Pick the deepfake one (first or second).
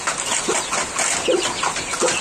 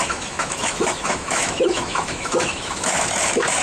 second